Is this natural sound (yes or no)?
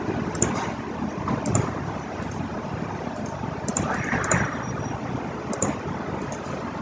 yes